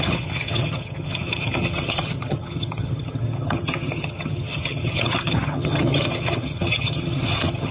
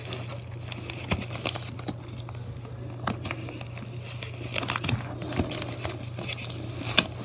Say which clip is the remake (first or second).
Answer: first